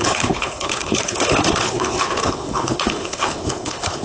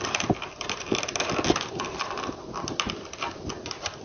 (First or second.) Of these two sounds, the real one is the second